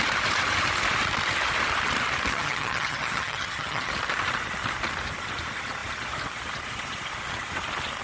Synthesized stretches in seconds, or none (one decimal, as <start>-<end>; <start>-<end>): 2.3-3.9